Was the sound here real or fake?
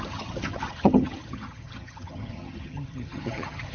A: fake